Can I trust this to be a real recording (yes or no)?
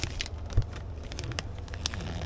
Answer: yes